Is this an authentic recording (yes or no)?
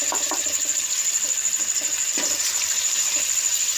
no